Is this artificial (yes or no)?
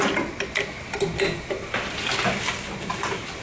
no